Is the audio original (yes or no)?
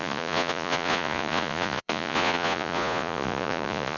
no